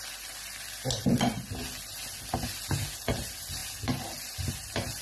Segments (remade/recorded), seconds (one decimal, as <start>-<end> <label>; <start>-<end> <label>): 0.0-5.0 recorded